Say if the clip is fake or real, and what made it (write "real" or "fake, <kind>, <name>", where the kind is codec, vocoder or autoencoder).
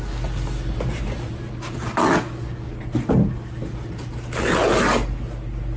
real